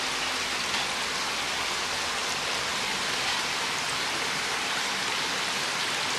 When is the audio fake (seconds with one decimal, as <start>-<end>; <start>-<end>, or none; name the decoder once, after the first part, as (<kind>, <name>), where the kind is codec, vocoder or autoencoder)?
none

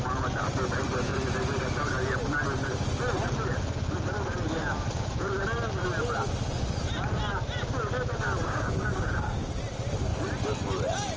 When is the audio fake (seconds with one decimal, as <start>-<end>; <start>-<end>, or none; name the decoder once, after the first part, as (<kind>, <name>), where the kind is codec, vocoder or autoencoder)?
8.4-9.5 (codec, DAC)